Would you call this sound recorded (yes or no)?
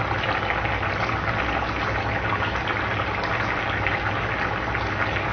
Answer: yes